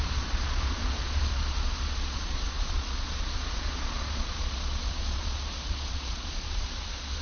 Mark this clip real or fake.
fake